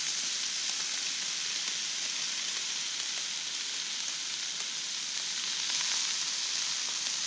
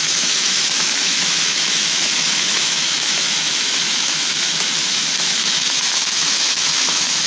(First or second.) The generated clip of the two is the second